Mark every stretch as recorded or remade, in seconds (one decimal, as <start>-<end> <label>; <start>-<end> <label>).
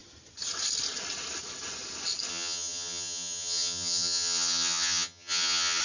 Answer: 0.0-2.3 recorded; 2.3-5.8 remade